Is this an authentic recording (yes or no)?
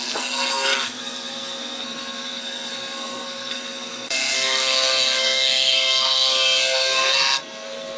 no